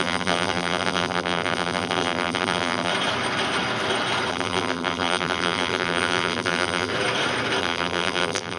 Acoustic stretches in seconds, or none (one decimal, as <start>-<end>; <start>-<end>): 2.9-4.3; 6.9-7.6